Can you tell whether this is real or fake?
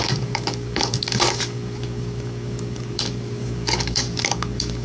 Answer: fake